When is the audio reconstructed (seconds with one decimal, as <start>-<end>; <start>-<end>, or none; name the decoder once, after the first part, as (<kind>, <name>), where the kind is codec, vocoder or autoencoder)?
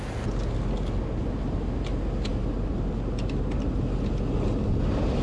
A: none